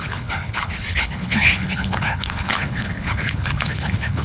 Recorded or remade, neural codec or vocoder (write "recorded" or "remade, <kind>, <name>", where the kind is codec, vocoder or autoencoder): remade, codec, HILCodec